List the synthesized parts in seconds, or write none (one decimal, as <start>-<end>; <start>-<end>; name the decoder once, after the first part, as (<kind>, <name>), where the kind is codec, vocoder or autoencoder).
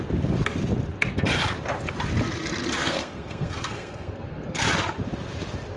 2.8-4.6 (codec, SNAC)